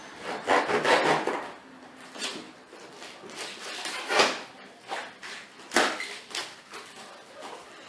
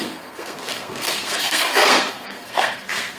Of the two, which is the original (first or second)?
first